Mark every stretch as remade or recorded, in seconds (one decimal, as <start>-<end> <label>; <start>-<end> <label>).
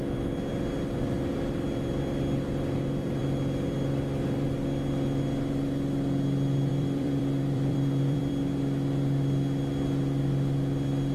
0.0-6.7 recorded; 6.7-8.3 remade; 8.3-11.1 recorded